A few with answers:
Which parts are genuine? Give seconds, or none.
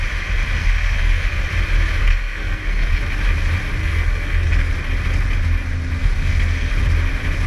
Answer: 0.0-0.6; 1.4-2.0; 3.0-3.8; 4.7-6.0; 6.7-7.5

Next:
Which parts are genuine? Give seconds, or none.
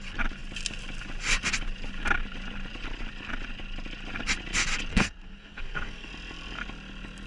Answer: 0.0-4.9; 6.1-7.3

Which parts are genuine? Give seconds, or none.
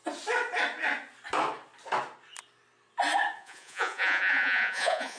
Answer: 0.0-3.4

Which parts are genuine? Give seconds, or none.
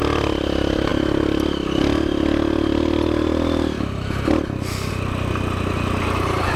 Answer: 0.0-6.6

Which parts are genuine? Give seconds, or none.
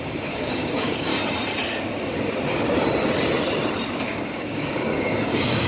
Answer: 1.1-4.1